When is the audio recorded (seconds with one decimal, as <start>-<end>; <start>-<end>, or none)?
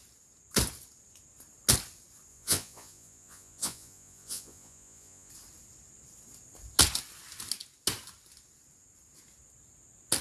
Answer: 0.0-2.3; 5.3-10.2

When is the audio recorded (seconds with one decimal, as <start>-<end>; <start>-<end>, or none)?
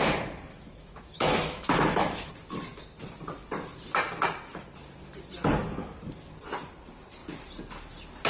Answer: 0.0-0.5; 2.3-8.3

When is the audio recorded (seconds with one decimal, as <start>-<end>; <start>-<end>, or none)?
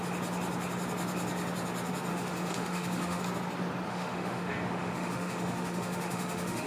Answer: 0.0-2.1; 3.2-3.9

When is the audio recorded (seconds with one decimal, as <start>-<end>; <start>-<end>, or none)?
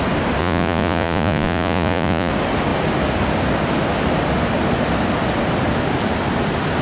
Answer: 0.0-0.4; 2.3-6.8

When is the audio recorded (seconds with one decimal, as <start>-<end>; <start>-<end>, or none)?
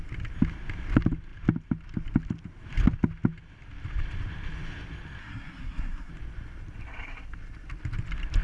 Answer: 0.0-5.2; 6.1-8.4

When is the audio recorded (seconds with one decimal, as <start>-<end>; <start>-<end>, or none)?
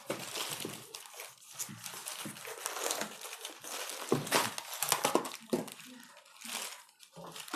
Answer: 0.0-7.6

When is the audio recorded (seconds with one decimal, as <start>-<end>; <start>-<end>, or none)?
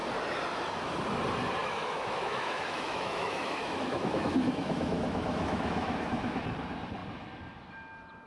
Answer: 0.0-1.6; 6.4-8.3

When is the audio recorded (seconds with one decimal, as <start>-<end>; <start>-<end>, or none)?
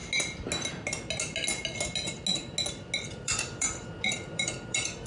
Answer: 0.0-3.1